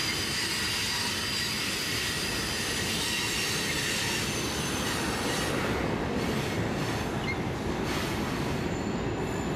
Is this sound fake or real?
real